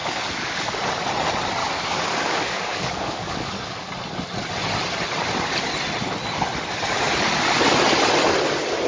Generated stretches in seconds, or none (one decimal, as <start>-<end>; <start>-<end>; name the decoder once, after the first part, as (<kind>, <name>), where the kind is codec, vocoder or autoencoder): 0.0-0.8 (codec, DAC); 1.6-3.9